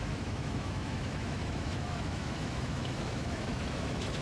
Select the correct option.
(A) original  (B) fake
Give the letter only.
B